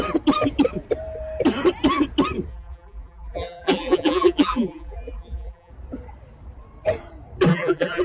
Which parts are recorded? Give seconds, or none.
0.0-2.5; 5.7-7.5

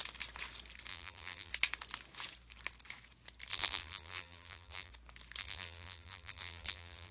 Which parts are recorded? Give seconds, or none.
0.0-0.9; 1.5-3.5; 4.9-5.4